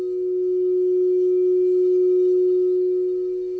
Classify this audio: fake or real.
real